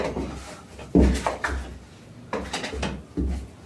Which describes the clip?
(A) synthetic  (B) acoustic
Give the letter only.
B